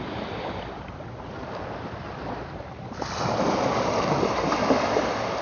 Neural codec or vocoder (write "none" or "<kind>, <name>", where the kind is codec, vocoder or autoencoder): none